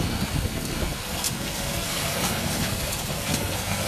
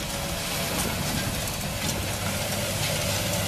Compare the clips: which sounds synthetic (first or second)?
first